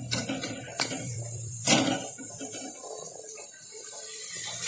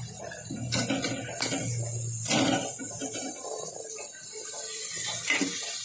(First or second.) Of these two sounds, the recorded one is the second